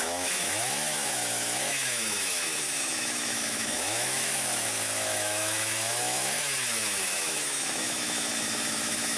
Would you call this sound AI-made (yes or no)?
yes